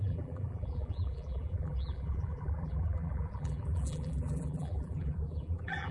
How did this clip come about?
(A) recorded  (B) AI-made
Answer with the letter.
B